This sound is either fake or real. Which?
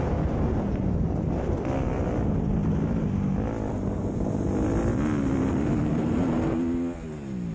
real